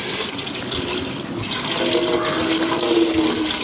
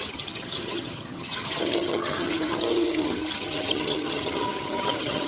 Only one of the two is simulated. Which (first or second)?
second